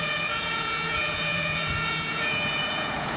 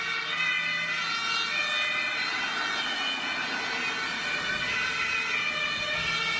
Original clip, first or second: second